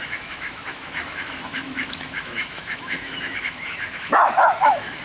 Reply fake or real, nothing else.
fake